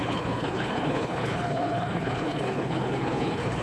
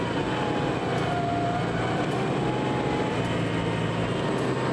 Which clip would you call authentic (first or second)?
second